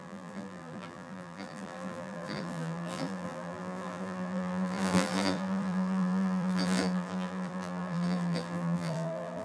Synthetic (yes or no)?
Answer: yes